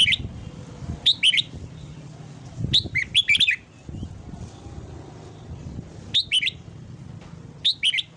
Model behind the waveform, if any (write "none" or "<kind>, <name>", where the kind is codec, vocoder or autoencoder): none